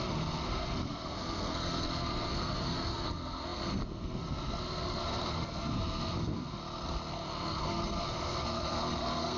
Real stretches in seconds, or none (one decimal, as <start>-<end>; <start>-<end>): 6.6-7.1